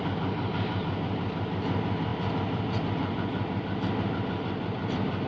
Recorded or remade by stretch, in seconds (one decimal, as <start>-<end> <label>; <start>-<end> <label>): 0.0-5.3 recorded